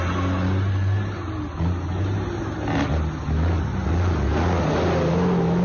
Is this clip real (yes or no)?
yes